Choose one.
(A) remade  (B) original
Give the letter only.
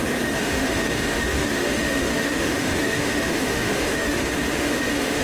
A